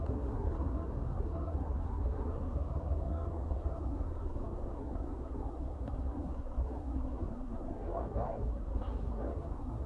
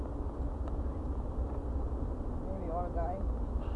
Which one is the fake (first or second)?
first